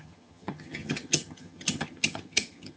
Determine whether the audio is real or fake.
fake